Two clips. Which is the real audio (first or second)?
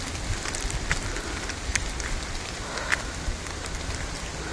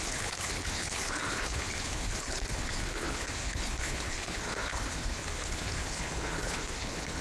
first